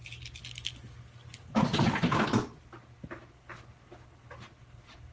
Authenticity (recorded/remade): recorded